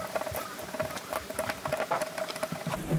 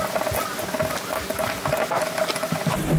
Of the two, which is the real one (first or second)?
second